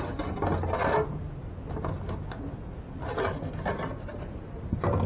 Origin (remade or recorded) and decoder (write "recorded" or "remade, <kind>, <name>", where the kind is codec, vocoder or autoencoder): recorded